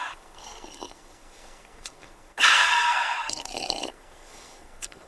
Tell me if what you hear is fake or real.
fake